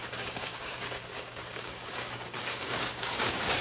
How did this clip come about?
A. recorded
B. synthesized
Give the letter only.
B